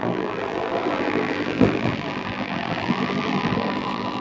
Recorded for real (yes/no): no